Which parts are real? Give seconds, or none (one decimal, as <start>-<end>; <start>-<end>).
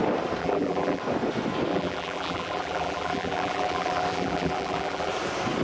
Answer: 0.0-0.4; 1.0-1.7; 5.1-5.6